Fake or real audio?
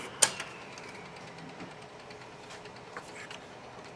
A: real